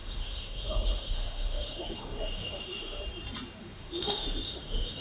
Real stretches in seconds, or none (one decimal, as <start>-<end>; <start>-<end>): 3.0-3.6